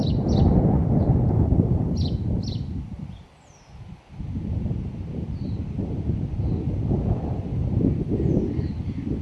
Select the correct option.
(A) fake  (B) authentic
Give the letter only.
B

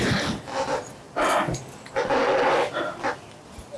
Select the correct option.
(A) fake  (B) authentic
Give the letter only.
B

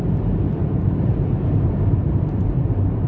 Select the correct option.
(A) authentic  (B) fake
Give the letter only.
B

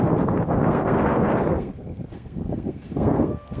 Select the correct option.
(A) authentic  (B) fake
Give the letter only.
B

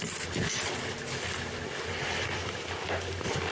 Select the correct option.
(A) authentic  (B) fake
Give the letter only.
A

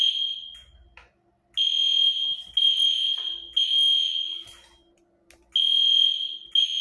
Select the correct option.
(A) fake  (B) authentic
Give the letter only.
B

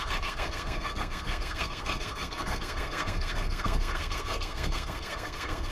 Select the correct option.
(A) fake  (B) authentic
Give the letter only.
A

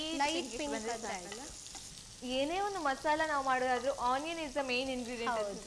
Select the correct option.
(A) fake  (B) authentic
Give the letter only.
B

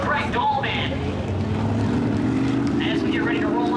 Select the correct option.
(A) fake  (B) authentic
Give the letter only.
B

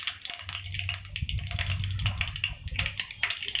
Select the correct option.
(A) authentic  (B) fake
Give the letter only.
A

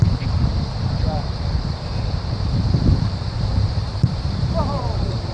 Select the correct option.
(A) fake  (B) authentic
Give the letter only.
A